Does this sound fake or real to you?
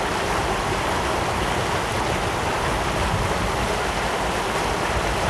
real